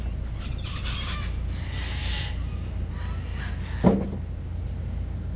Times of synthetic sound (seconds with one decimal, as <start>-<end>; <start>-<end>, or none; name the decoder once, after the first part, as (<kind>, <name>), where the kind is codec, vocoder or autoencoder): none